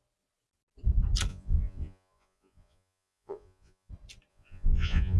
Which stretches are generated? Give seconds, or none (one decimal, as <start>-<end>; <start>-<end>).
1.3-3.9; 4.3-5.2